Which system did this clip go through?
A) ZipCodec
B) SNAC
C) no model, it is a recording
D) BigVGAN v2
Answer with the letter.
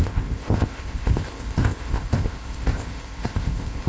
A